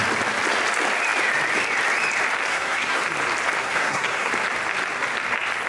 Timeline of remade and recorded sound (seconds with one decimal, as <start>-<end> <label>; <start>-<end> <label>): 0.0-2.5 recorded; 2.5-3.0 remade; 3.0-3.6 recorded; 3.6-4.3 remade; 4.3-5.7 recorded